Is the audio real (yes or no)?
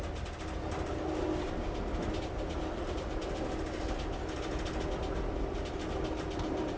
yes